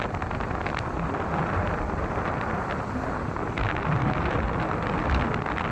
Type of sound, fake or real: real